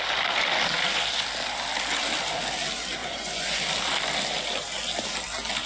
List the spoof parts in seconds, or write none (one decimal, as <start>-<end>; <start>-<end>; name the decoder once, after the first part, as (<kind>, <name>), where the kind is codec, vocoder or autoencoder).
3.0-3.6 (vocoder, Vocos)